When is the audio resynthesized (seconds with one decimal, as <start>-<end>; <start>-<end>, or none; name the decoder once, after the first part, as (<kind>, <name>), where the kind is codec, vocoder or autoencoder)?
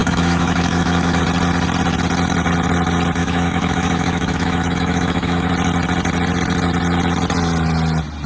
0.0-1.2 (autoencoder, DAC-VAE); 3.2-5.5